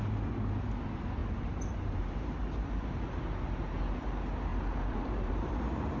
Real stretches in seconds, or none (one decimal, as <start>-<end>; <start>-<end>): 0.0-1.2; 3.2-4.5; 5.5-6.0